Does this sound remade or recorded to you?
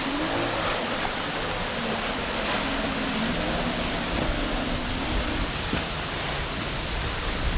recorded